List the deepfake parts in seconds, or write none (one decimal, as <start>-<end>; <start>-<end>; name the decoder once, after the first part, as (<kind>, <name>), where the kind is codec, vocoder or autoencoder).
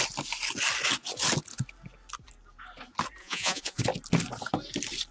3.2-3.8 (vocoder, Vocos)